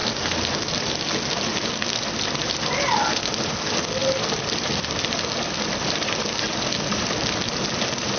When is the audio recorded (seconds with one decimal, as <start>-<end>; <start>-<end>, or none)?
0.0-8.2